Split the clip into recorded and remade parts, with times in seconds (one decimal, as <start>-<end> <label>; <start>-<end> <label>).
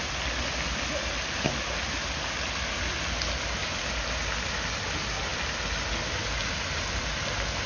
0.0-7.7 recorded